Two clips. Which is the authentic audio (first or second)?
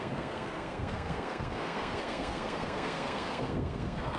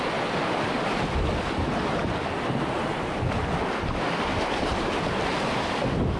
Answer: second